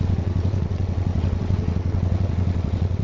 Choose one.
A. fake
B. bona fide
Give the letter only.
A